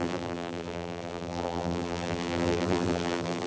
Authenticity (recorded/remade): remade